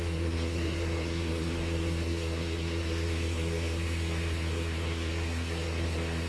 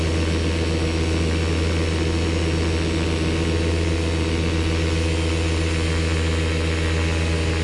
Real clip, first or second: second